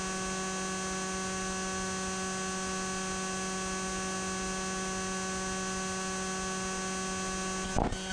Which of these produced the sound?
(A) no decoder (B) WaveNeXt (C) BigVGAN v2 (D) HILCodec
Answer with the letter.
A